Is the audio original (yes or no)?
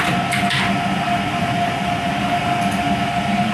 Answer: yes